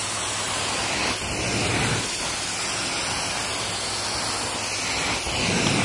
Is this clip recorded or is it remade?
recorded